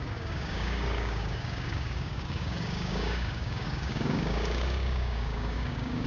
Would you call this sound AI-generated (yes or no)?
yes